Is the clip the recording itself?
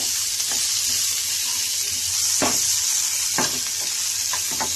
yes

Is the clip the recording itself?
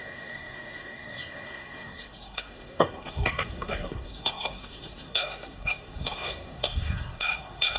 no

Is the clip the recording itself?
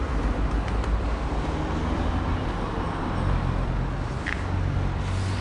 yes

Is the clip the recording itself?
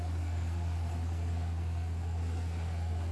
no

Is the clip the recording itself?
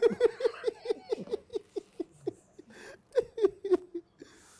yes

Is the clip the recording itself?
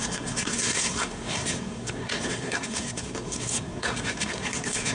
no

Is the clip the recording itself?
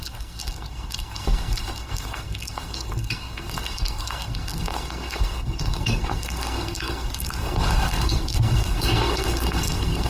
no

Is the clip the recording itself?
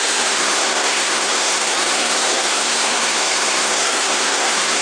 no